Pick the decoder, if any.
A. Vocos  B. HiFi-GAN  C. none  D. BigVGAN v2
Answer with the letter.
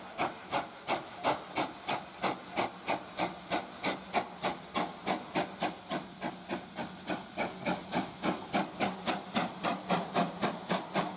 C